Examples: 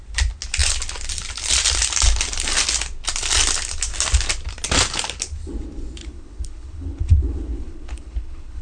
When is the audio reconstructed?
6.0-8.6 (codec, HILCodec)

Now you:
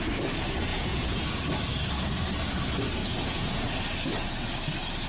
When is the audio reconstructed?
0.7-1.4 (vocoder, Vocos); 3.0-3.6

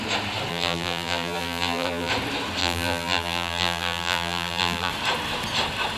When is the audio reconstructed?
0.5-2.1 (vocoder, BigVGAN v2); 2.6-4.9

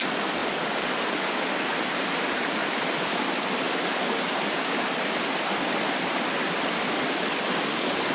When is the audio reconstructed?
0.4-1.3 (vocoder, BigVGAN v2); 2.6-7.5

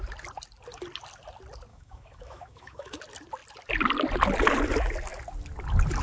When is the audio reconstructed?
1.7-3.0 (autoencoder, DAC-VAE)

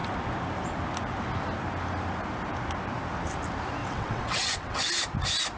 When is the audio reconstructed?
3.8-4.9 (vocoder, WaveNeXt)

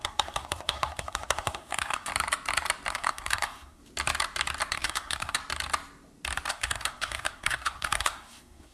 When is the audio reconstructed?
0.0-2.1 (codec, SNAC); 2.9-3.8; 4.7-5.4; 6.5-8.7

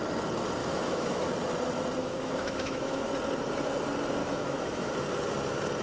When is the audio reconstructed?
0.6-1.3 (autoencoder, DAC-VAE); 2.0-3.1; 4.2-4.9